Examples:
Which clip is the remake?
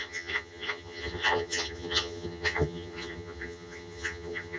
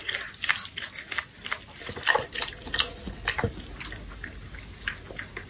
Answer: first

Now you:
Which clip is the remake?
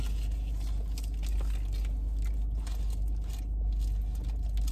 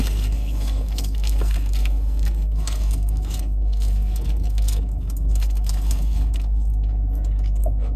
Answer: second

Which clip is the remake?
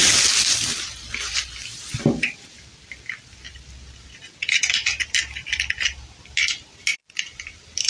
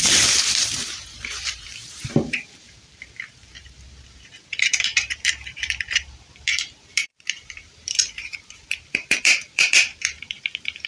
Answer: second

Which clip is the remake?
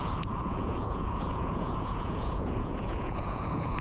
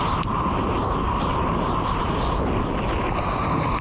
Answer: first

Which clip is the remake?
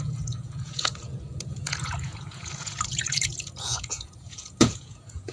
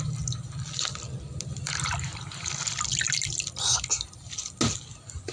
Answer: first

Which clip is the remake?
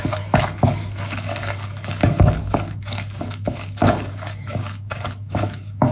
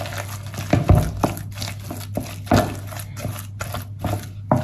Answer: first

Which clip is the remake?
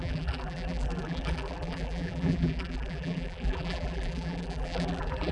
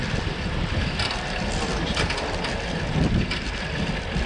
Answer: first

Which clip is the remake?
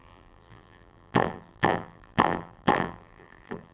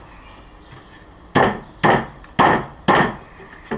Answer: first